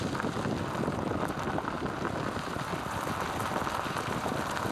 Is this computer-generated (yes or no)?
no